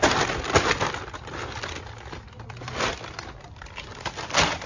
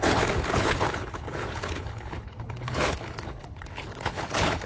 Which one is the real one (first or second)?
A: first